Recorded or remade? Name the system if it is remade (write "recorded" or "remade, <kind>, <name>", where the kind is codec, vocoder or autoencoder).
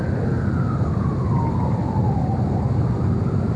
recorded